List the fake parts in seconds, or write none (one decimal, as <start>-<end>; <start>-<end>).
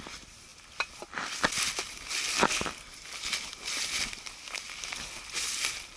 none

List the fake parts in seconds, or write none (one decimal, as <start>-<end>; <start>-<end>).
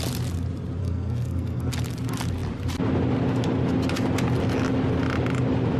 0.8-1.7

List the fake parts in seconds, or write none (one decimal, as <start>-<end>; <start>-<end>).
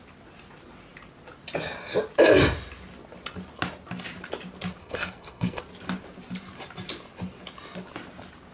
4.8-5.6